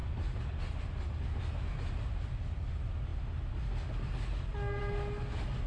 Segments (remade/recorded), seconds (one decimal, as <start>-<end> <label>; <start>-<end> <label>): 0.0-0.6 remade; 0.6-5.7 recorded